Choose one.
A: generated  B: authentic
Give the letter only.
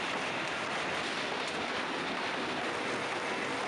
A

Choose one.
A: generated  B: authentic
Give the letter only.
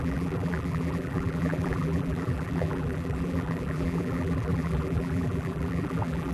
A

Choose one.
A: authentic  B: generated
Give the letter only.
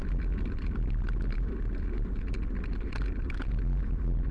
A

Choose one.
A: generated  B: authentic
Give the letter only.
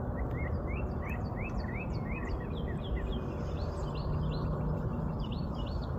B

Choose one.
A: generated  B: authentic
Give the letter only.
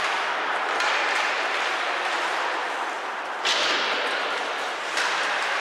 B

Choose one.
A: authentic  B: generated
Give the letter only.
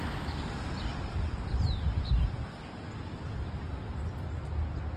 A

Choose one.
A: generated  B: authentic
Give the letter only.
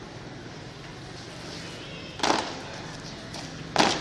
B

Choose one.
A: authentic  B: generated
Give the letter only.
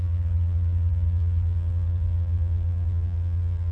B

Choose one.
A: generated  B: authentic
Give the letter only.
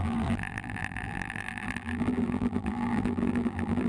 A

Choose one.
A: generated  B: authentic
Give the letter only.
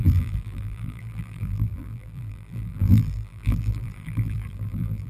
A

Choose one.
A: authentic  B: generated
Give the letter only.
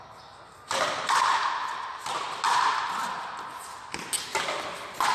A